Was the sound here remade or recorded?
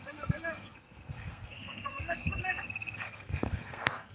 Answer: remade